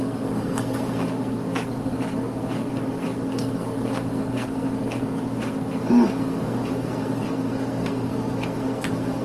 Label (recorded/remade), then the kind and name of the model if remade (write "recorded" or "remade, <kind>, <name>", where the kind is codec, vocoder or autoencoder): remade, codec, SNAC